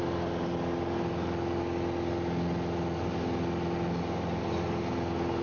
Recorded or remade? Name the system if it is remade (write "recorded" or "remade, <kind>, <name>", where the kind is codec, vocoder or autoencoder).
recorded